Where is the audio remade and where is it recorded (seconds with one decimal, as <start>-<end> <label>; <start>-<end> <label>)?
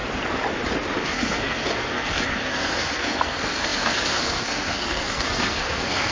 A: 0.0-1.0 recorded; 1.0-6.1 remade